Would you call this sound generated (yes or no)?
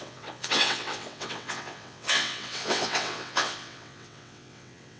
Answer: yes